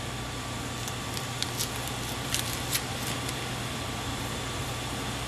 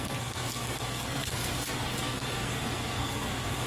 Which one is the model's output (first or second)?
second